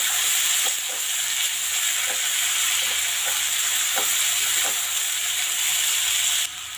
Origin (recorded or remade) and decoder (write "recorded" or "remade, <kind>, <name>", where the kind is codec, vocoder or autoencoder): remade, vocoder, BigVGAN v2